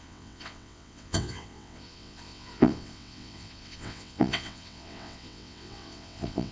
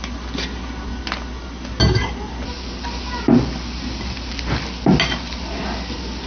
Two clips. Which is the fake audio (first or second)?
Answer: first